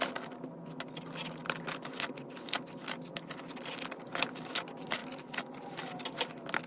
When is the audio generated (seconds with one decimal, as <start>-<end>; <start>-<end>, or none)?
none